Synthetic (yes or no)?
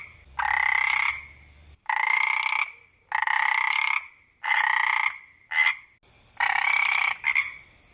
no